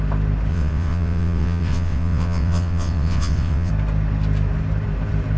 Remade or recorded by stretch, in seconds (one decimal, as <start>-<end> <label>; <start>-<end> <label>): 0.0-0.5 recorded; 0.5-3.7 remade; 3.7-5.4 recorded